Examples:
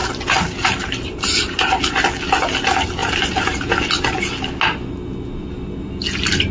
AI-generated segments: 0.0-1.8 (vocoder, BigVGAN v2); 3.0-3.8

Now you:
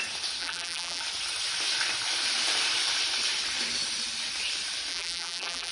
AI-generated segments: 0.4-1.0 (vocoder, BigVGAN v2); 4.9-5.7

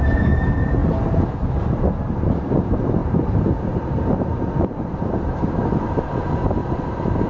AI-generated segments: 0.0-0.8 (vocoder, BigVGAN v2); 2.5-7.3

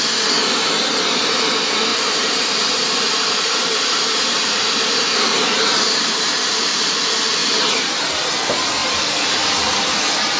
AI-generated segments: 1.9-6.8 (vocoder, BigVGAN v2); 7.4-8.1; 8.8-9.8

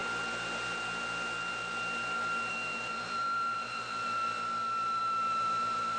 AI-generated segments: 2.5-4.2 (vocoder, BigVGAN v2); 5.0-6.0

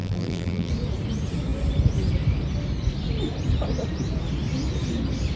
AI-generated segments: 0.0-0.7 (vocoder, BigVGAN v2)